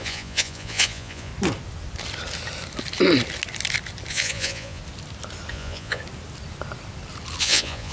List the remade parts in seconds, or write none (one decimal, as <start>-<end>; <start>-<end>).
0.0-1.3; 4.1-4.8; 5.5-6.0; 7.4-7.9